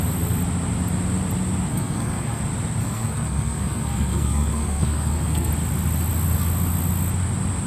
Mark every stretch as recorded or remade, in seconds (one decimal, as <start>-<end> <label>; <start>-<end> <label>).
0.0-1.7 recorded; 1.7-2.4 remade; 2.4-2.8 recorded; 2.8-5.5 remade; 5.5-7.7 recorded